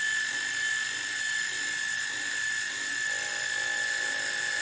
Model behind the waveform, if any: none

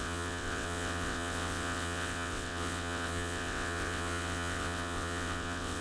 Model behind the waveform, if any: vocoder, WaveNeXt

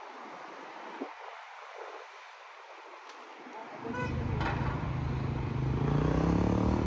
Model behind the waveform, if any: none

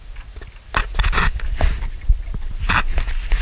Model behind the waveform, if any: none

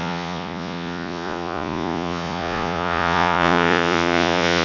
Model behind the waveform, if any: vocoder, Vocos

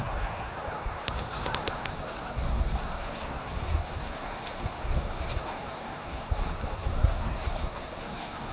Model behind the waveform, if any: codec, SNAC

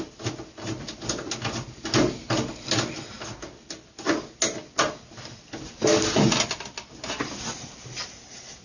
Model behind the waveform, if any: none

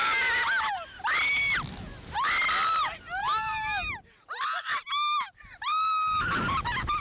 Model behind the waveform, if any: none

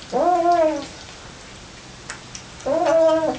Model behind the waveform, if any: none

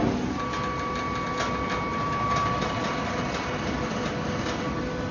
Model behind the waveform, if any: none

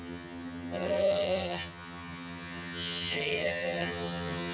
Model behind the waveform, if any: vocoder, HiFi-GAN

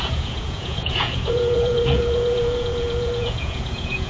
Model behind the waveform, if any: vocoder, Vocos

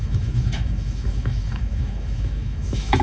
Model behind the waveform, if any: autoencoder, DAC-VAE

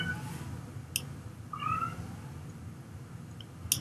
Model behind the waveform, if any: none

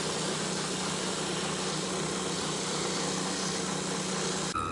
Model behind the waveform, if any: none